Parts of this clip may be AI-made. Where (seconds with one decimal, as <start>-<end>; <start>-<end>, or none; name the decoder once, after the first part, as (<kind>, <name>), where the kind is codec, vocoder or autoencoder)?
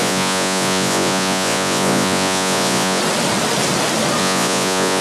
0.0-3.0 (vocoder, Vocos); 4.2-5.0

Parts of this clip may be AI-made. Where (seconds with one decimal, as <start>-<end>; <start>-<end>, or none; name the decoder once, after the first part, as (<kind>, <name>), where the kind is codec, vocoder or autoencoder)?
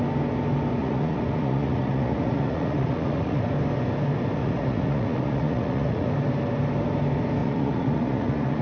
0.8-3.4 (vocoder, Vocos); 4.4-6.1; 7.4-8.6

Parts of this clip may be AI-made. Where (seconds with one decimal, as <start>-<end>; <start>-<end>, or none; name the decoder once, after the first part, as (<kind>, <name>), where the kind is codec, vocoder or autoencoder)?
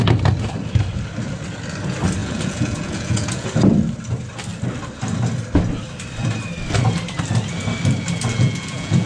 2.2-3.5 (vocoder, Vocos); 8.3-9.1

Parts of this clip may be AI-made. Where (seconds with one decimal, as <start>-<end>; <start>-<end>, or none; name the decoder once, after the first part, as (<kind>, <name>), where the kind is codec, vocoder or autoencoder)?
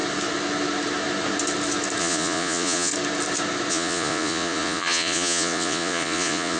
2.0-2.9 (vocoder, Vocos); 3.7-6.6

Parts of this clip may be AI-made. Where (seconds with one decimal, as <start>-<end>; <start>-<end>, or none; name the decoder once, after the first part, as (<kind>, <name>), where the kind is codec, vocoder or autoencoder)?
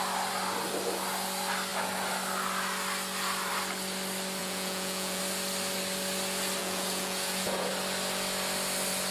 4.4-5.2 (vocoder, Vocos); 6.6-7.7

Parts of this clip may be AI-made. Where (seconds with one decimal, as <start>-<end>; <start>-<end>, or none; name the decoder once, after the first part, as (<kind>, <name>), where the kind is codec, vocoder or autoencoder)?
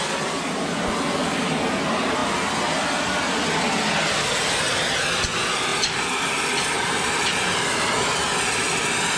none